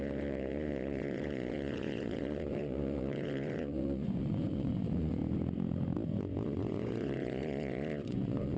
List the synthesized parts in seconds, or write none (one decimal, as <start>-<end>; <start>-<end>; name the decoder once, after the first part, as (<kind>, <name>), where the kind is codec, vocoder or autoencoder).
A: 0.0-5.2 (vocoder, Vocos); 6.2-8.6

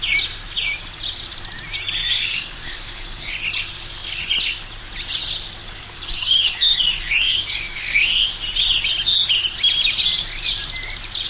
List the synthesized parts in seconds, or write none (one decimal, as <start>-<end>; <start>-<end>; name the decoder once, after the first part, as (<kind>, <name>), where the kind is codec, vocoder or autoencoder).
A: 2.0-3.3 (codec, DAC); 5.6-8.3

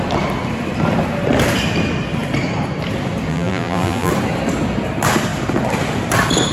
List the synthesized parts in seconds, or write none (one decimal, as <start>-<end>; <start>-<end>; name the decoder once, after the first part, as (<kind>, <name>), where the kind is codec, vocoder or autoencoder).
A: 3.3-4.1 (vocoder, BigVGAN v2)

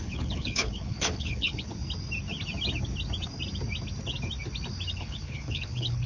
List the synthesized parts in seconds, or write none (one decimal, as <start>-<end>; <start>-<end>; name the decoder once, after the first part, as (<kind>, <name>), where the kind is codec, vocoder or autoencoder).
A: 0.0-1.7 (codec, HILCodec); 4.9-6.1

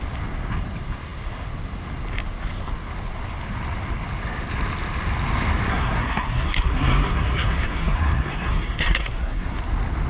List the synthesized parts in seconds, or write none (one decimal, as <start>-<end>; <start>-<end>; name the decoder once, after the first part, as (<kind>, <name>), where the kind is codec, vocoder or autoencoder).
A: 5.7-9.6 (codec, SNAC)

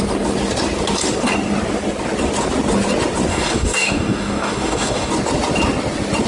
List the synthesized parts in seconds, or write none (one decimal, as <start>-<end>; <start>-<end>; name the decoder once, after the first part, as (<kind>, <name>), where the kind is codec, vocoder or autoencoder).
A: 3.3-5.1 (codec, DAC)

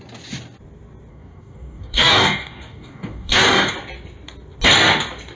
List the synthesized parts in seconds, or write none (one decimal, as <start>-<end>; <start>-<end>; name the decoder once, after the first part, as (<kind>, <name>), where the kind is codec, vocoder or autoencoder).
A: 1.1-3.7 (codec, DAC)

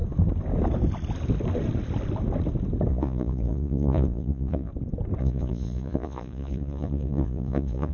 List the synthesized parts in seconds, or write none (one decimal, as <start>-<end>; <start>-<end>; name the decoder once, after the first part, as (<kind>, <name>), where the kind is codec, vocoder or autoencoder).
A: 2.9-4.7 (vocoder, Vocos); 5.2-7.9